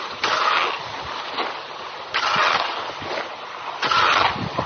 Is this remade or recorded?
recorded